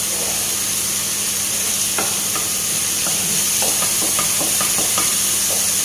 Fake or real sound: fake